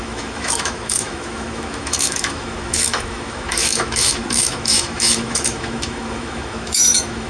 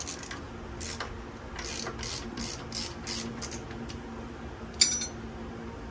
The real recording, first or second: second